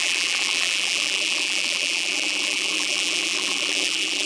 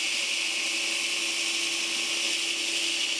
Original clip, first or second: second